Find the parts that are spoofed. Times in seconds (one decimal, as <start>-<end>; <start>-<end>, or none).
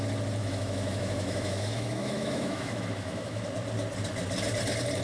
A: 0.4-3.4